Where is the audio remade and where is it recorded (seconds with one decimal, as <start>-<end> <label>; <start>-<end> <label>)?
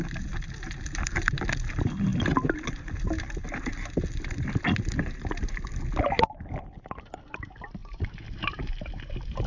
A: 0.0-9.5 recorded